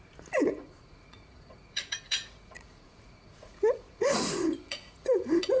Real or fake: fake